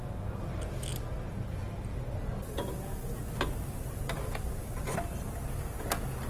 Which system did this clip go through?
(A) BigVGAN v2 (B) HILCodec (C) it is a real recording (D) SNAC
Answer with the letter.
C